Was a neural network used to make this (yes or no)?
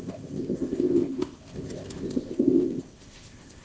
yes